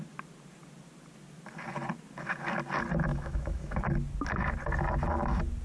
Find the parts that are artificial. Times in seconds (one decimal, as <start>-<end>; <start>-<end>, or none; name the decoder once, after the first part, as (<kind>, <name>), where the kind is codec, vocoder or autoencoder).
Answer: 3.1-3.8 (autoencoder, DAC-VAE)